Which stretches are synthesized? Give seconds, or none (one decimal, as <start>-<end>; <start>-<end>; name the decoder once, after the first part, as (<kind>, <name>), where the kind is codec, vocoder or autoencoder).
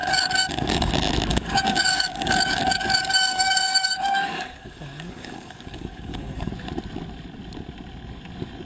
0.0-0.9 (codec, DAC); 1.3-6.5